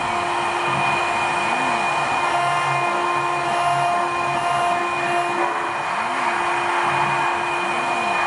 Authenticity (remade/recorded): recorded